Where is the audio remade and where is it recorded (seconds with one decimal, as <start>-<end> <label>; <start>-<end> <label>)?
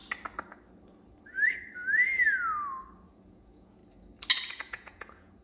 0.0-3.2 recorded; 3.2-3.8 remade; 3.8-4.5 recorded; 4.5-5.4 remade